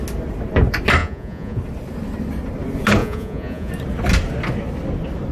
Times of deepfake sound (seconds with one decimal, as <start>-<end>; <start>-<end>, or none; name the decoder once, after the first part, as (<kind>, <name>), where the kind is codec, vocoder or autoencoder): 1.0-1.6 (vocoder, Vocos); 3.0-3.7